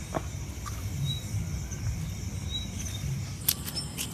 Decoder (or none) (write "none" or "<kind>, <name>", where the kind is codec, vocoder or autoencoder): none